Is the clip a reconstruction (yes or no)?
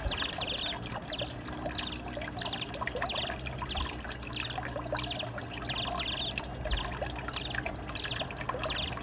no